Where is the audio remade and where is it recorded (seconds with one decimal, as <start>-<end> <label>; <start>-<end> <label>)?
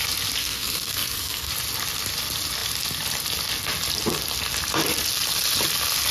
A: 0.0-0.4 recorded; 0.4-1.5 remade; 1.5-6.1 recorded